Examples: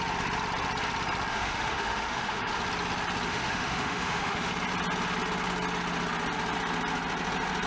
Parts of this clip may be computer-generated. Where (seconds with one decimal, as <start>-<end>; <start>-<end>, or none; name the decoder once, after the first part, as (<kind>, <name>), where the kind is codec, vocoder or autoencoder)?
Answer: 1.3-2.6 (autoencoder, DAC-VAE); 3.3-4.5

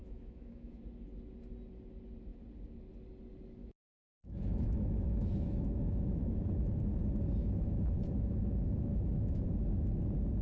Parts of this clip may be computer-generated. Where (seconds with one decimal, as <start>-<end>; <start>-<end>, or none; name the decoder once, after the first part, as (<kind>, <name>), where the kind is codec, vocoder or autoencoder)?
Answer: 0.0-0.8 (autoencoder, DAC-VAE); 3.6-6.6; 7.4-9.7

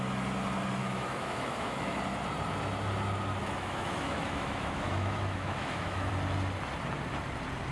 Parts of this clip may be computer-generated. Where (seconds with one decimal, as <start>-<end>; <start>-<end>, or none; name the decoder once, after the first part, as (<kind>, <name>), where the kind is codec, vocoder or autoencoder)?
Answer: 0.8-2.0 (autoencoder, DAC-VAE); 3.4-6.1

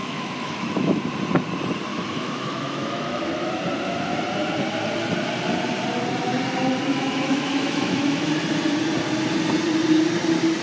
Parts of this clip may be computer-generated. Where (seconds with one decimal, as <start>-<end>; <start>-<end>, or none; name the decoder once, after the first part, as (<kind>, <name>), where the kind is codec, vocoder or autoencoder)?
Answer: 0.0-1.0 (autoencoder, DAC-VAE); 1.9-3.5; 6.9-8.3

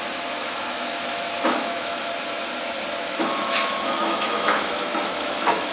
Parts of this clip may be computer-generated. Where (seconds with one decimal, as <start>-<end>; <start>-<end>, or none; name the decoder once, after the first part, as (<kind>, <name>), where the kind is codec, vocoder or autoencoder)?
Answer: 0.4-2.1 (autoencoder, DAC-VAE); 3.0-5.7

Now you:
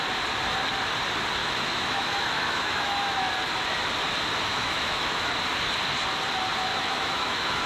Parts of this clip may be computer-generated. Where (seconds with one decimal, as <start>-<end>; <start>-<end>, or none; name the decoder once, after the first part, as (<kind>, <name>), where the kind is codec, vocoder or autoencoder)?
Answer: 1.4-3.3 (autoencoder, DAC-VAE); 4.5-5.3; 6.7-7.7

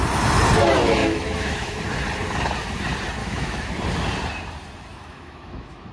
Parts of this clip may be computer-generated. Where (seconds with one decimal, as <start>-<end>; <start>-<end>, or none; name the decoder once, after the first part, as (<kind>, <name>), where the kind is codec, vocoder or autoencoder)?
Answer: 1.0-1.8 (autoencoder, DAC-VAE); 3.2-3.7; 4.9-5.9